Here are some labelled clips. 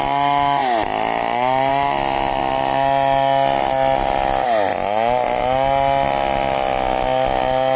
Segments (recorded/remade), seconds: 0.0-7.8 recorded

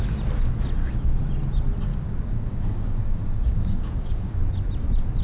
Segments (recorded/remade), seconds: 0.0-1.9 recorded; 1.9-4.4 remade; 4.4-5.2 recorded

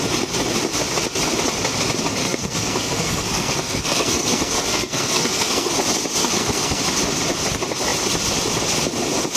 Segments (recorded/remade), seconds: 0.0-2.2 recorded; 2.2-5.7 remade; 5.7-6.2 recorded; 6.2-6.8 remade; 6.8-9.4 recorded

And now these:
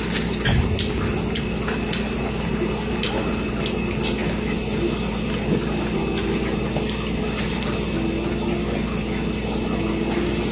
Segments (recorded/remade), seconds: 0.0-10.5 recorded

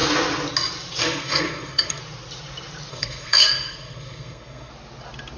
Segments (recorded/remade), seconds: 0.0-1.0 recorded; 1.0-2.0 remade; 2.0-2.9 recorded; 2.9-4.7 remade; 4.7-5.4 recorded